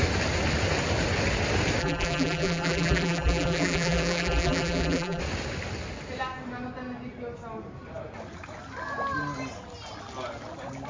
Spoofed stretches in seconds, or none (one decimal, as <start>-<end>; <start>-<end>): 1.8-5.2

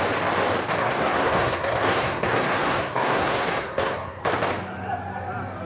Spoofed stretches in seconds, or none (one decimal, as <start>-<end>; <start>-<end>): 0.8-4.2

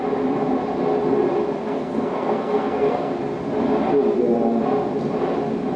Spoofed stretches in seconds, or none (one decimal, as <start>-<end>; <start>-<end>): 1.6-3.1

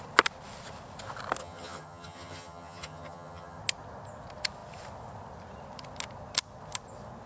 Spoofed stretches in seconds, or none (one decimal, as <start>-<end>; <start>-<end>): 1.4-3.6